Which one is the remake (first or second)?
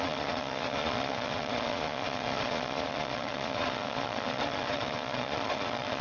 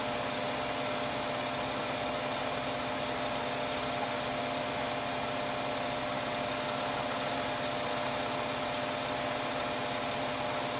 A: first